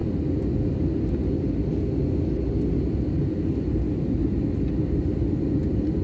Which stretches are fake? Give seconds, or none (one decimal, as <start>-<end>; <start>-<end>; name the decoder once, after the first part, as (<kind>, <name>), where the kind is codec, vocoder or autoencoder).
3.2-4.2 (vocoder, BigVGAN v2); 5.0-6.0